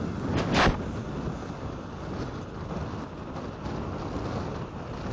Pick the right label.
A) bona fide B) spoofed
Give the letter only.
A